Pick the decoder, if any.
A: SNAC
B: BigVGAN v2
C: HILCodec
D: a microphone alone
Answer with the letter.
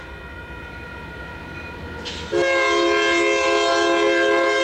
D